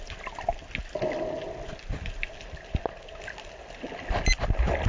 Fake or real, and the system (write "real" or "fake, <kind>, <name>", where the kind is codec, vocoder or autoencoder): real